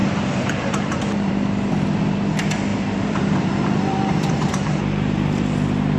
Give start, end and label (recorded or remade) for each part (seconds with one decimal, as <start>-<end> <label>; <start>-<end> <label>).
0.0-1.3 remade; 1.3-2.7 recorded; 2.7-5.6 remade; 5.6-6.0 recorded